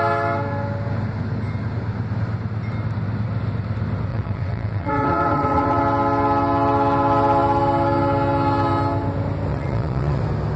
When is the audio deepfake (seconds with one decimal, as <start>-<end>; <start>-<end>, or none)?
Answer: 4.1-5.8; 9.5-10.2